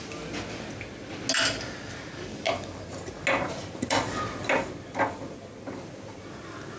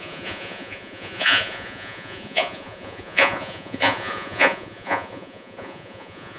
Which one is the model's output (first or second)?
second